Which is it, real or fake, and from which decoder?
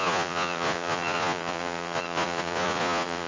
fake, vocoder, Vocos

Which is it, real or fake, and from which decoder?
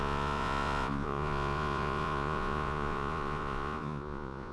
fake, vocoder, Vocos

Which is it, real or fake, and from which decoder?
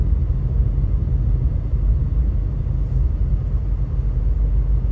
real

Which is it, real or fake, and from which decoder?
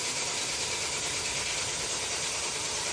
real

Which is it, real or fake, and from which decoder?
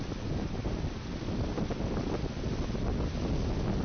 real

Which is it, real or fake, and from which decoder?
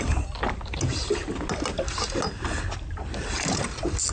real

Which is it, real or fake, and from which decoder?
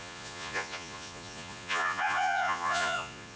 fake, vocoder, Vocos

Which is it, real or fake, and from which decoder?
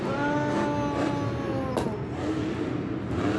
real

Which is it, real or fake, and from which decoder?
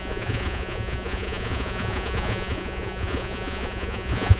fake, vocoder, Vocos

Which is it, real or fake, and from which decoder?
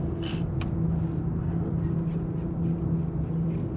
real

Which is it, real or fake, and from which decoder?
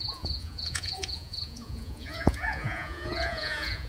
fake, vocoder, Vocos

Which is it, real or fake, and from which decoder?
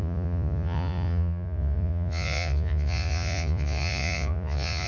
fake, vocoder, Vocos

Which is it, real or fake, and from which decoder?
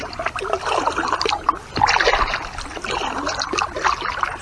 real